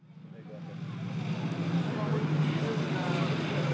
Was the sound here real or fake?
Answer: real